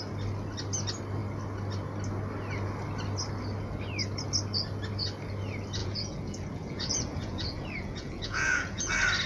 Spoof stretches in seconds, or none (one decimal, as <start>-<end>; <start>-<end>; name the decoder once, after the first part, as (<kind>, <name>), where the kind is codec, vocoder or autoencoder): 5.8-8.9 (vocoder, Vocos)